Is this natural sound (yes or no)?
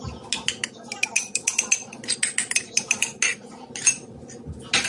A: yes